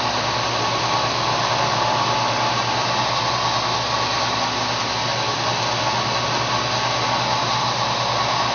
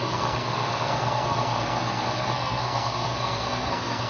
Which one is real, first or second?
first